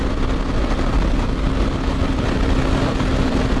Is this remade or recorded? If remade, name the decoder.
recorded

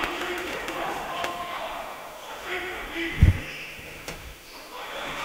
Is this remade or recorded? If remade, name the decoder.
remade, autoencoder, DAC-VAE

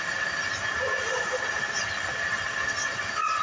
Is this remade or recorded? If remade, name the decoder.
recorded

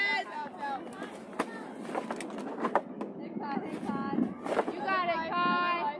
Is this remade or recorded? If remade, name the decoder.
recorded